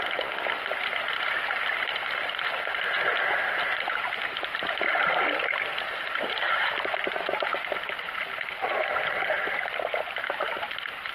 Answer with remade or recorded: recorded